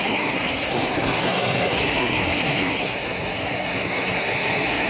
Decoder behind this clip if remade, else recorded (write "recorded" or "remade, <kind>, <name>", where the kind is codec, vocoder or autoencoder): remade, codec, SNAC